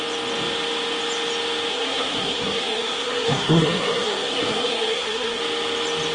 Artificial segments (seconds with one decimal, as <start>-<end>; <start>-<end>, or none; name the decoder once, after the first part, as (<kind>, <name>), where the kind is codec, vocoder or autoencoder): 1.7-5.4 (codec, SNAC)